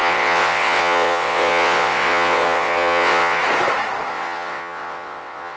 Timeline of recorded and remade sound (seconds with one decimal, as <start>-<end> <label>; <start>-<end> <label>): 0.0-3.4 remade; 3.4-4.1 recorded; 4.1-5.6 remade